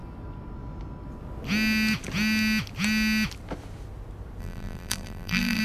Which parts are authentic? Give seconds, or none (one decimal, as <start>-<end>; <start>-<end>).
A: 0.0-4.4